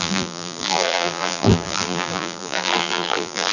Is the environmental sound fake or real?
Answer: fake